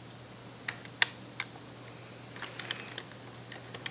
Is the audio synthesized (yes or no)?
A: no